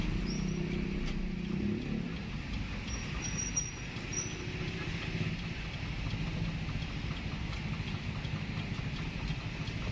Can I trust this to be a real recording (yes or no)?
yes